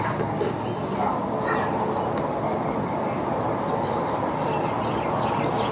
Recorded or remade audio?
recorded